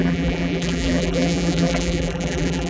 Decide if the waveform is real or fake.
fake